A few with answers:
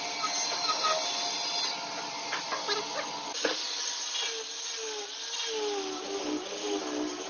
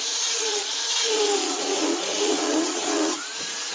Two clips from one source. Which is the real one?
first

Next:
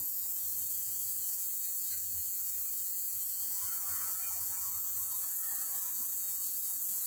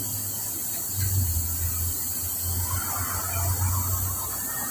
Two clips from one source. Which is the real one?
second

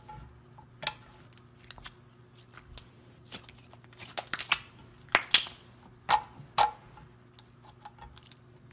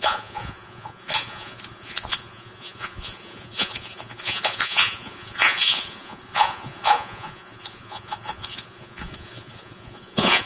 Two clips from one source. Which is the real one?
first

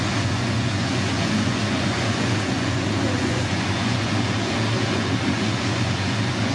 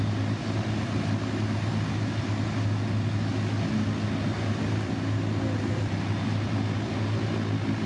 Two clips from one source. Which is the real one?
second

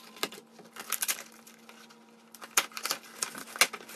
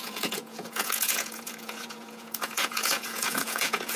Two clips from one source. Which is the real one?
first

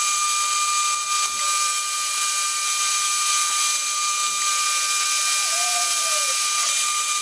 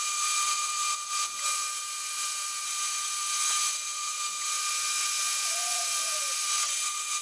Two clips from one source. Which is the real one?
first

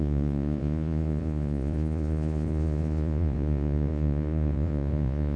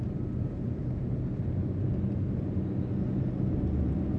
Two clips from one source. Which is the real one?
second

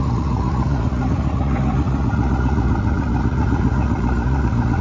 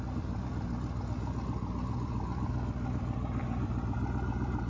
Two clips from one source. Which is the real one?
second